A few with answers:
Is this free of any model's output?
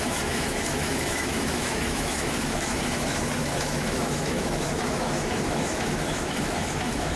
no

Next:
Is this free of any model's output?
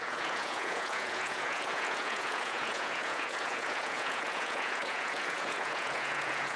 no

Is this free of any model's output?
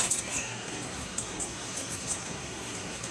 no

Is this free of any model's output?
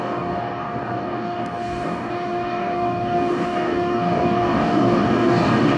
no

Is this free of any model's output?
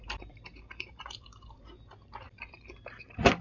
no